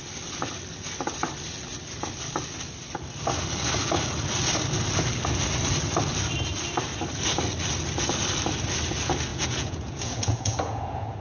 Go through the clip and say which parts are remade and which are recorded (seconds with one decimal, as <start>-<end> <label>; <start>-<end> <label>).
0.0-9.3 recorded; 9.3-11.2 remade